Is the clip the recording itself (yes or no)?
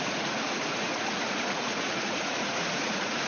no